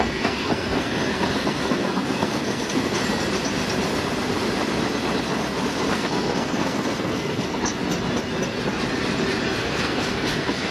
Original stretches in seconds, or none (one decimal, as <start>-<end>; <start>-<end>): 3.0-5.9; 7.8-9.6